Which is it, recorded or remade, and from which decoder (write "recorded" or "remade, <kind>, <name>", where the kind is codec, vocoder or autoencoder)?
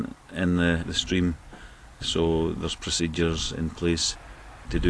recorded